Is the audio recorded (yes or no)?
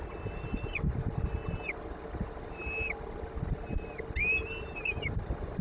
yes